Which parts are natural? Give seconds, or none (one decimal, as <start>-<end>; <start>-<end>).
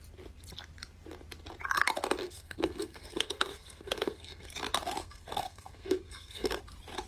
0.0-2.2; 4.5-5.0; 6.6-7.1